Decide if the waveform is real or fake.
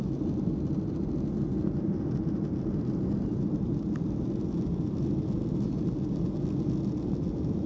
real